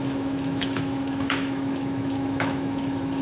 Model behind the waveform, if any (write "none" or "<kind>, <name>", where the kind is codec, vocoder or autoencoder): autoencoder, DAC-VAE